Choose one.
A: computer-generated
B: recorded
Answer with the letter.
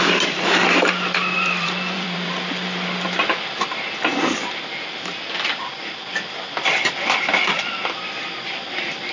A